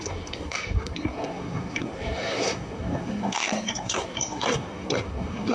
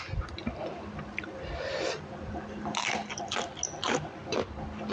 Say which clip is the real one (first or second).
second